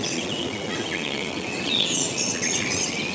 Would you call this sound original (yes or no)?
no